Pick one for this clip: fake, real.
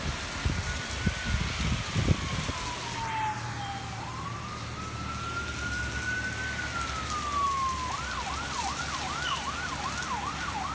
real